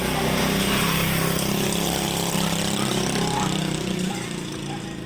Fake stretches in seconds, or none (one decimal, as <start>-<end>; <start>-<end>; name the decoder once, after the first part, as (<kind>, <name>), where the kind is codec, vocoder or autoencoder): none